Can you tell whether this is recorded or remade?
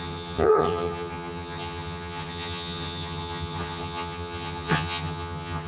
remade